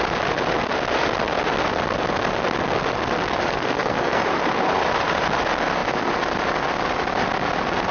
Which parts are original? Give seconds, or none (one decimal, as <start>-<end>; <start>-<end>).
0.0-3.4; 4.2-7.9